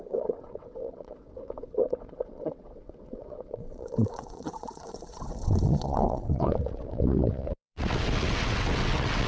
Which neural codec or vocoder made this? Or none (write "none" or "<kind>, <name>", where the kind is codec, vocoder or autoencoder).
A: vocoder, WaveNeXt